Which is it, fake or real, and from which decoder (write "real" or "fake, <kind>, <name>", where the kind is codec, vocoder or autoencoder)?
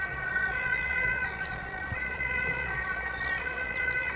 fake, vocoder, Vocos